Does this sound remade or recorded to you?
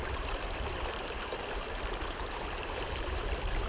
remade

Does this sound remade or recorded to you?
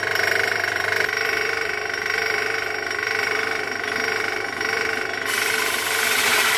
remade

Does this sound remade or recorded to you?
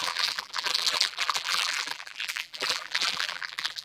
remade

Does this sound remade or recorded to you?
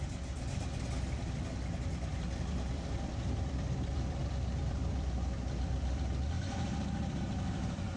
remade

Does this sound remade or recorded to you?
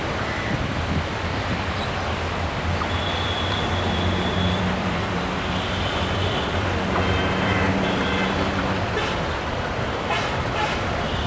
remade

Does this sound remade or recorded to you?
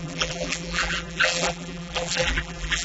remade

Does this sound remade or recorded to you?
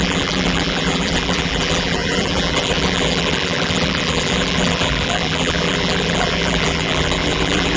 remade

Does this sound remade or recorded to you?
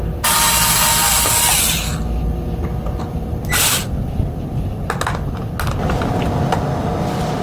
recorded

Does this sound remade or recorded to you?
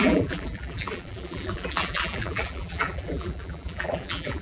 remade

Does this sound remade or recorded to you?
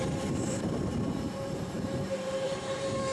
remade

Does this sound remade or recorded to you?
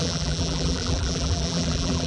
remade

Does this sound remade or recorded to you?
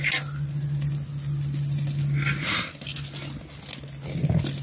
recorded